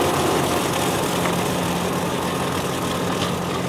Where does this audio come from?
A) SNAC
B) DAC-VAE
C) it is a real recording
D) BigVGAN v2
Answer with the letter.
C